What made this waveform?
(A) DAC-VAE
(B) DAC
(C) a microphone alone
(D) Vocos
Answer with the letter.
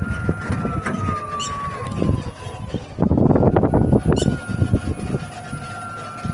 C